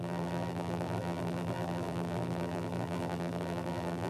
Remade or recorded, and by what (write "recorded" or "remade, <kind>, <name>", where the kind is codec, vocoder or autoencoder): remade, vocoder, BigVGAN v2